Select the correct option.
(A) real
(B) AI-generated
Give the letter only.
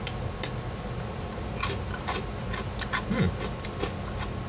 A